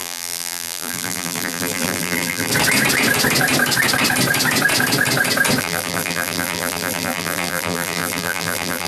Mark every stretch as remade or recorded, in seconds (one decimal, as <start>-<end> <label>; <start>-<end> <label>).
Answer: 0.0-2.5 remade; 2.5-5.6 recorded; 5.6-8.9 remade